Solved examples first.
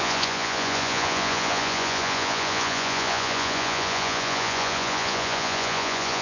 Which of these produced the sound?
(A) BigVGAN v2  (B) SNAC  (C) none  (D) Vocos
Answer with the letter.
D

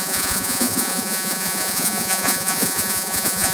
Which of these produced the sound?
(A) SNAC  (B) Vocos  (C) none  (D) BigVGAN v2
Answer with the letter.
B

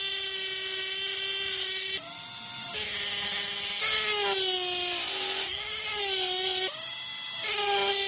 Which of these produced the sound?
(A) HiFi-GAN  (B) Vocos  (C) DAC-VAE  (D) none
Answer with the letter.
D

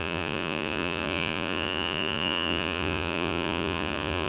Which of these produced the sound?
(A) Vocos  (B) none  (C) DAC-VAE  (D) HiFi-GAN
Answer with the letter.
A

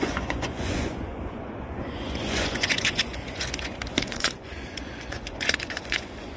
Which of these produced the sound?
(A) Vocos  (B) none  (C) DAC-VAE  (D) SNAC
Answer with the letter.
A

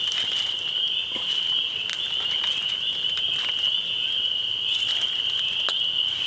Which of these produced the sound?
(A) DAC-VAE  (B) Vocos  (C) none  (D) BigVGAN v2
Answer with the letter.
C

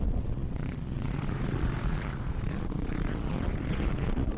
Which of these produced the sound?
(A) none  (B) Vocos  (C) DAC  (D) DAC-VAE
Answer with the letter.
B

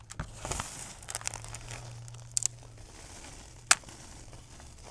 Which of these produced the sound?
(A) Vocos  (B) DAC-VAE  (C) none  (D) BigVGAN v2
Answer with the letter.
C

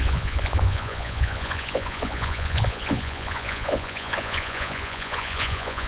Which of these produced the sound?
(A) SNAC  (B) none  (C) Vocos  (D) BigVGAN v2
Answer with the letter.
C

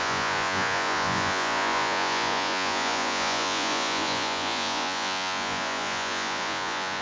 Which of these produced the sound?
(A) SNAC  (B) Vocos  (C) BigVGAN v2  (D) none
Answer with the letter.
B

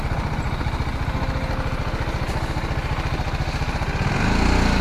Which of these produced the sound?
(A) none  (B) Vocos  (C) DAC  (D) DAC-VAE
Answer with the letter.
A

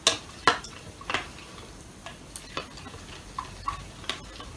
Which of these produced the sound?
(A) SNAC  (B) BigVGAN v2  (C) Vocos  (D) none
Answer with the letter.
D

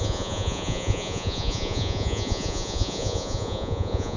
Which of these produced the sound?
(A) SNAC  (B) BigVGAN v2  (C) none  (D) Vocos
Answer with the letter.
D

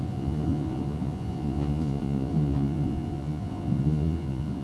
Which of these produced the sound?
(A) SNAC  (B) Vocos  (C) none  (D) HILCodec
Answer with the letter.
B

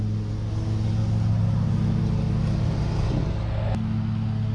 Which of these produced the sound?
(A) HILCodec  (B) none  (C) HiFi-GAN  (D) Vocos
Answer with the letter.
B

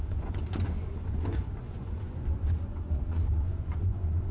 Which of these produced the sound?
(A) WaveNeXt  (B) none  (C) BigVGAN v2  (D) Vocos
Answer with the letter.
D